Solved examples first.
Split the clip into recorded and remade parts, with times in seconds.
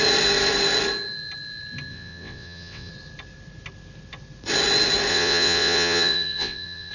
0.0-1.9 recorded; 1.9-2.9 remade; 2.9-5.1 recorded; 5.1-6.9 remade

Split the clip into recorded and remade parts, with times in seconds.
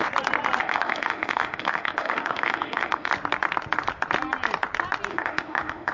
0.0-0.6 recorded; 0.6-3.1 remade; 3.1-5.1 recorded; 5.1-5.9 remade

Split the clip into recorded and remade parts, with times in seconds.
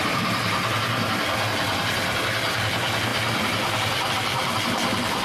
0.0-3.1 recorded; 3.1-4.1 remade; 4.1-5.2 recorded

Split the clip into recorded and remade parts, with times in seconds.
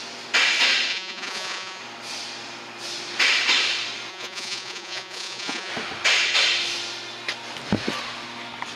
0.0-0.9 recorded; 0.9-1.8 remade; 1.8-4.1 recorded; 4.1-5.7 remade; 5.7-8.8 recorded